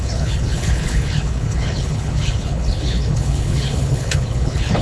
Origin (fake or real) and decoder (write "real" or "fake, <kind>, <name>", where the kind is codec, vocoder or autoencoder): fake, codec, HILCodec